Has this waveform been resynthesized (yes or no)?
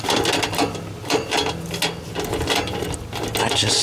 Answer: no